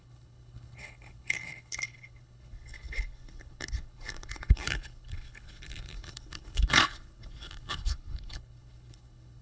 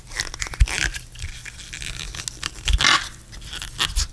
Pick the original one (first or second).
second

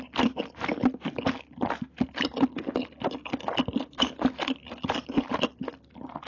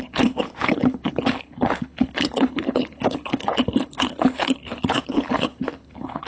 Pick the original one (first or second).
first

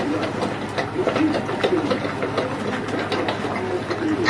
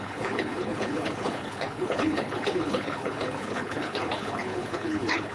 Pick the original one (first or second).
first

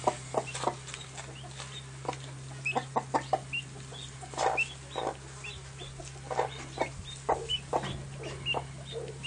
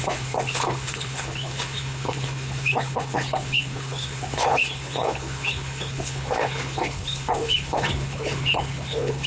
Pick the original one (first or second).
first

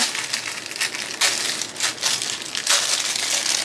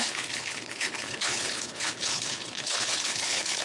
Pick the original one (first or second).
first